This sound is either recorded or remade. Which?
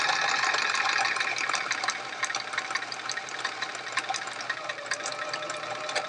recorded